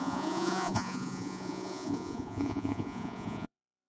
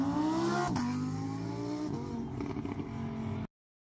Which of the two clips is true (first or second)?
second